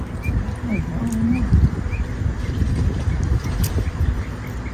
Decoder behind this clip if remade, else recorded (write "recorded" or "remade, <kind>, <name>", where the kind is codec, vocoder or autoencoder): recorded